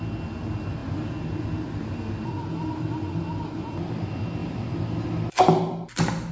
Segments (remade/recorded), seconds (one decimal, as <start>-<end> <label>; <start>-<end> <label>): 0.0-4.4 recorded; 4.4-5.0 remade; 5.0-6.3 recorded